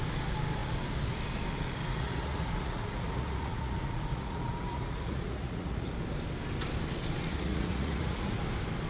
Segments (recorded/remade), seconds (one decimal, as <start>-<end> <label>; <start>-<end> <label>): 0.0-1.8 recorded; 1.8-5.9 remade; 5.9-7.3 recorded; 7.3-8.4 remade; 8.4-8.9 recorded